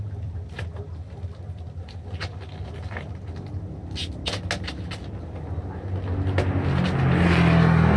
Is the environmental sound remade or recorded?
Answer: recorded